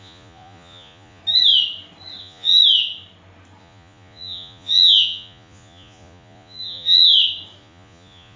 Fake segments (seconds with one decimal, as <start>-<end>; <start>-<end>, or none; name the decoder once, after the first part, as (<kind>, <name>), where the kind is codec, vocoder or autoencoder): 0.0-1.2 (vocoder, Vocos); 2.2-2.6; 3.6-7.1; 7.6-8.4